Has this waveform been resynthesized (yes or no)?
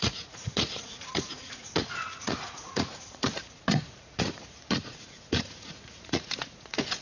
yes